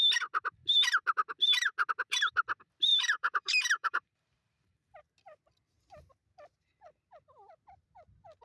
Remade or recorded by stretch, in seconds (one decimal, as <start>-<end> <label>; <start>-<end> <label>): 0.0-2.9 recorded; 2.9-5.0 remade; 5.0-8.4 recorded

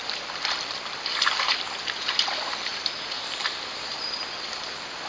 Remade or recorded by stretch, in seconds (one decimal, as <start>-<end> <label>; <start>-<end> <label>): 0.0-2.7 recorded; 2.7-3.9 remade; 3.9-5.1 recorded

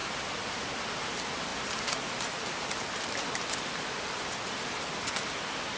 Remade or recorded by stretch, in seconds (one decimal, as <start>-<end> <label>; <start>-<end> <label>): 0.0-1.5 recorded; 1.5-4.5 remade; 4.5-5.8 recorded

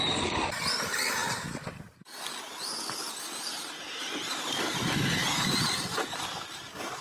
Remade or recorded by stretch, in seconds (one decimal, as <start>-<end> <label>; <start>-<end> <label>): 0.0-1.2 recorded; 1.2-1.8 remade; 1.8-3.5 recorded; 3.5-4.3 remade; 4.3-7.0 recorded

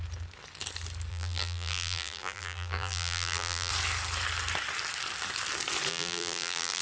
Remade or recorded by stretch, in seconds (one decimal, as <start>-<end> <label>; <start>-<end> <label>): 0.0-1.1 recorded; 1.1-3.7 remade; 3.7-5.9 recorded; 5.9-6.8 remade

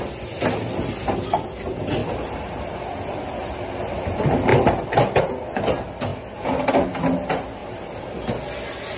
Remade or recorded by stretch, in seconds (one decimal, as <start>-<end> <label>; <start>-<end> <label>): 0.0-2.0 recorded; 2.0-2.6 remade; 2.6-9.0 recorded

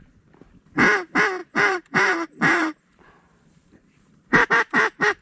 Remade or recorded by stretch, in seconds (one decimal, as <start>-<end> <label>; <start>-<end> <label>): 0.0-1.4 recorded; 1.4-4.5 remade; 4.5-5.2 recorded

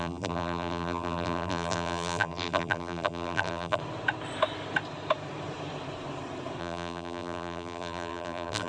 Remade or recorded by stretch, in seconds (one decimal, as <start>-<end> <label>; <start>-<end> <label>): 0.0-3.8 remade; 3.8-6.6 recorded; 6.6-8.7 remade